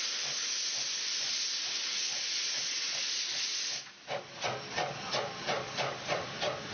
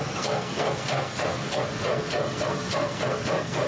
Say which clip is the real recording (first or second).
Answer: first